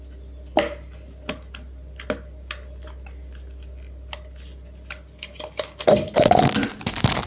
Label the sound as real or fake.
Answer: real